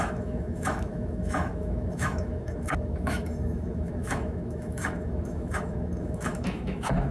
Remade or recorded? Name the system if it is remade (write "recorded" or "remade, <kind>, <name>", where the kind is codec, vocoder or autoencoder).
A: remade, autoencoder, DAC-VAE